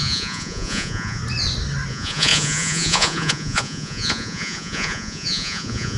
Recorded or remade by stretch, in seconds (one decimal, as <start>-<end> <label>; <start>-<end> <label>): 0.0-1.2 remade; 1.2-1.9 recorded; 1.9-6.0 remade